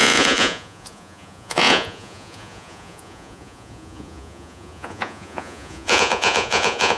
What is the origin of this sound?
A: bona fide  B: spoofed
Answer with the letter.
B